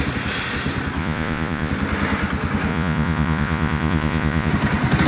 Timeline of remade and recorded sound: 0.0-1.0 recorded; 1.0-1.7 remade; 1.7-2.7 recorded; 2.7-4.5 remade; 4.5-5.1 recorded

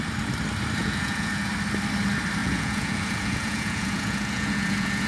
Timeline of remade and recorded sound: 0.0-0.8 recorded; 0.8-1.5 remade; 1.5-2.4 recorded; 2.4-5.1 remade

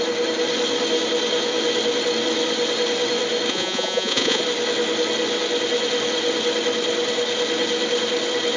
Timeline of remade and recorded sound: 0.0-3.5 recorded; 3.5-4.4 remade; 4.4-8.6 recorded

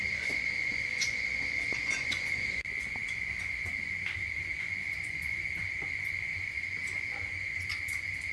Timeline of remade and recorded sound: 0.0-8.3 remade

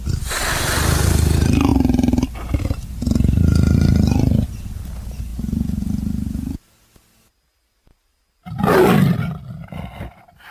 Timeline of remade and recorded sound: 0.0-10.5 recorded

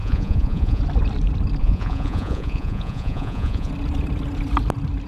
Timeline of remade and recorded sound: 0.0-0.8 remade; 0.8-1.6 recorded; 1.6-3.7 remade; 3.7-5.1 recorded

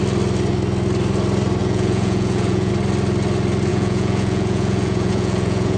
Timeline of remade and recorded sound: 0.0-1.6 recorded; 1.6-2.7 remade; 2.7-3.7 recorded; 3.7-5.8 remade